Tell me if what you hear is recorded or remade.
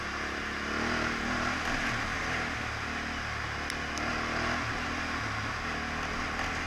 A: recorded